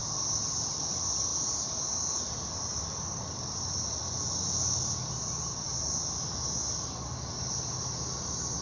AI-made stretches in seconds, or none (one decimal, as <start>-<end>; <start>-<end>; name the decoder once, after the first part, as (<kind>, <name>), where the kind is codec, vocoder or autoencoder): none

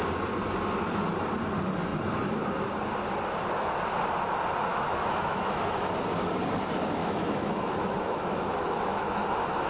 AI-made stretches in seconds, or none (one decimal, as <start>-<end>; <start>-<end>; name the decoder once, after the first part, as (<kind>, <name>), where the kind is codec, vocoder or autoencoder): 4.7-5.8 (autoencoder, DAC-VAE); 7.0-9.1

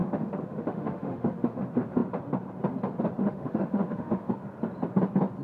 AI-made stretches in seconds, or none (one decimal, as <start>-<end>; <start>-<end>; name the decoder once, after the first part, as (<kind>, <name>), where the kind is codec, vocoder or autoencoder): 0.0-1.6 (autoencoder, DAC-VAE); 3.2-4.3

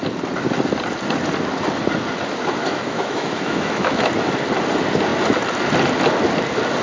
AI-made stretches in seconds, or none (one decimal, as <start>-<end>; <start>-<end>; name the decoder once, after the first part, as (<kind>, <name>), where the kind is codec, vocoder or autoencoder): 2.6-4.1 (autoencoder, DAC-VAE)

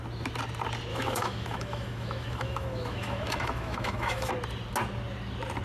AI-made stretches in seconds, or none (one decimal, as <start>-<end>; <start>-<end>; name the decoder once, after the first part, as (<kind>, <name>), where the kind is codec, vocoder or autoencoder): 0.9-4.3 (autoencoder, DAC-VAE)

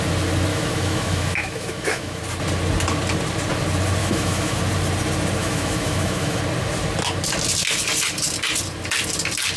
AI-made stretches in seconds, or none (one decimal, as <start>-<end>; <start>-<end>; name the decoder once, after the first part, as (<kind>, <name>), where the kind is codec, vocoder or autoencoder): 0.5-2.2 (autoencoder, DAC-VAE); 4.0-4.6; 5.4-6.4

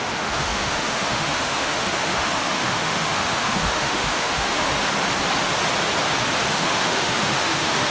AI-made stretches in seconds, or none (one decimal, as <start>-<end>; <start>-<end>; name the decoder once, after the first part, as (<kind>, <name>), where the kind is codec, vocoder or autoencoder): 0.0-4.7 (autoencoder, DAC-VAE); 6.5-7.9